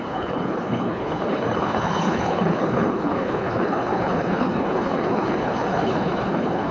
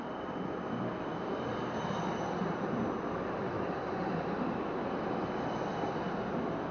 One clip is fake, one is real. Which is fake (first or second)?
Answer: first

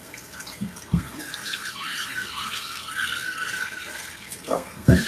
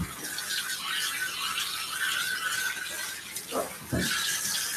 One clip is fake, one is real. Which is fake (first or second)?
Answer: first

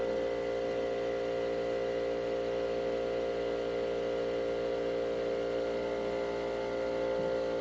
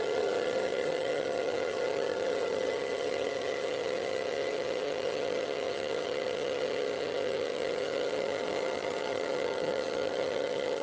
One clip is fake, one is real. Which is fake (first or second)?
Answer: second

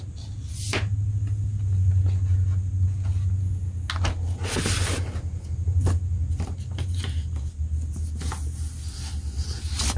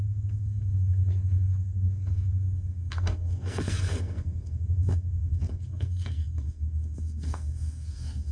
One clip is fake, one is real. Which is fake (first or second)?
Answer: second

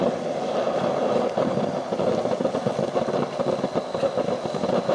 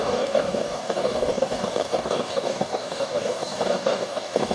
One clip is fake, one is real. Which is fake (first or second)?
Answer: second